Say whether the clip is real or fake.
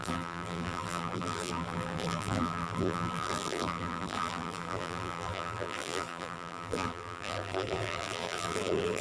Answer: fake